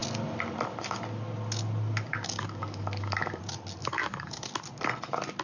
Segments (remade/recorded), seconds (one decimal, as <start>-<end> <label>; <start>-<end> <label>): 0.0-2.1 recorded; 2.1-3.4 remade; 3.4-3.8 recorded; 3.8-4.5 remade; 4.5-5.4 recorded